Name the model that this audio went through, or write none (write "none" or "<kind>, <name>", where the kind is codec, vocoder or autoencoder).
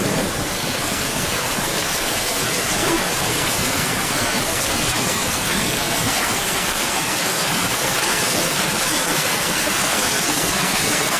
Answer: codec, SNAC